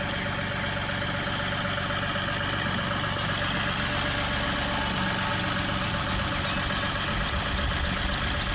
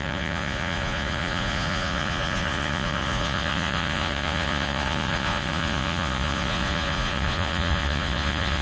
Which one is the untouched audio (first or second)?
first